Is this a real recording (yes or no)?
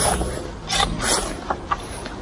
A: yes